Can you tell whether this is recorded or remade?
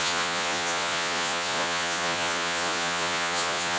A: remade